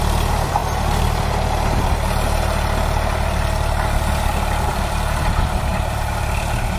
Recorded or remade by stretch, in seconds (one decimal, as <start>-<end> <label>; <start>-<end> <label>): 0.0-0.6 remade; 0.6-4.7 recorded; 4.7-5.7 remade; 5.7-6.8 recorded